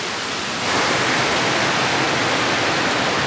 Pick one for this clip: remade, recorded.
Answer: recorded